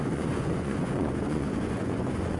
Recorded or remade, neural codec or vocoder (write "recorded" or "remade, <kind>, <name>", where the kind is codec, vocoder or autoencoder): remade, vocoder, Vocos